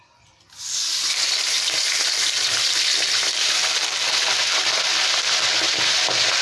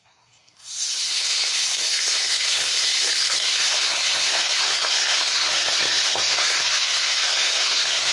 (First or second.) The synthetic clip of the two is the second